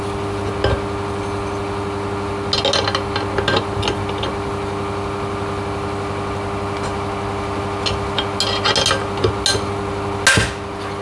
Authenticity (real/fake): real